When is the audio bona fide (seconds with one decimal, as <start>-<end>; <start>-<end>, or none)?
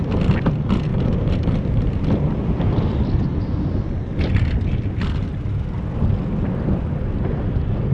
0.0-0.9; 1.9-7.9